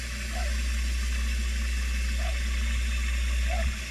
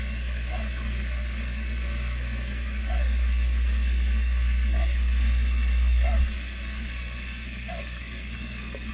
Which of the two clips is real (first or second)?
first